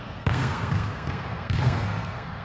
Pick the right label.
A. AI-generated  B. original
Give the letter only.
A